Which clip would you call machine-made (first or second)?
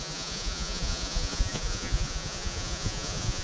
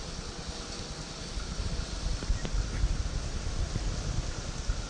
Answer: first